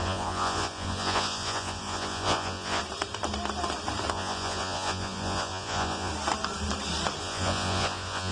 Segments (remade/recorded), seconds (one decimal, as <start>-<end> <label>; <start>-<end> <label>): 0.0-2.8 remade; 2.8-4.1 recorded; 4.1-6.1 remade; 6.1-7.2 recorded; 7.2-8.3 remade